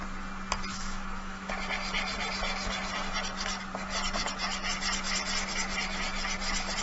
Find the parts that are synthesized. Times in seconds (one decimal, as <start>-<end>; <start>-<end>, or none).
0.7-1.5

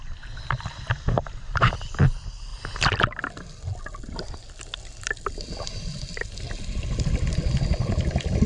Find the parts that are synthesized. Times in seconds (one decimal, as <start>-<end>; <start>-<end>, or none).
none

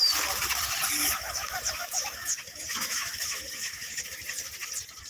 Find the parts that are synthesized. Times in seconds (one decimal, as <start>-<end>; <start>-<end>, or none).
1.0-4.0

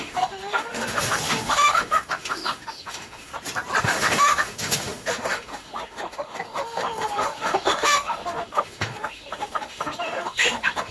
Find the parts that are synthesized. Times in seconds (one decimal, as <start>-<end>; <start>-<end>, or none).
0.0-3.3; 3.8-10.9

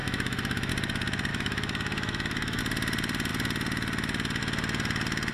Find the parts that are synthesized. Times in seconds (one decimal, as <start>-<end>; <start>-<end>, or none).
0.0-0.7; 1.3-2.6

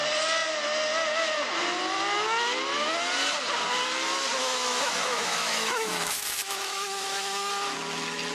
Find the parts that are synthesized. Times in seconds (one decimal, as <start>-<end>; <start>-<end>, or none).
4.4-7.5

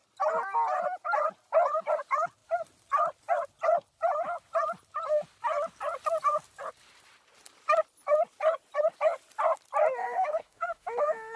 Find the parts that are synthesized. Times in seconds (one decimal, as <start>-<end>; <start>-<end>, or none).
10.0-11.4

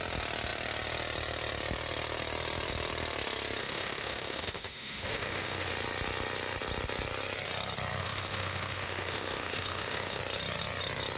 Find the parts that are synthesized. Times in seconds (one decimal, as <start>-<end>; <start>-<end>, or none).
3.6-5.7; 8.0-10.2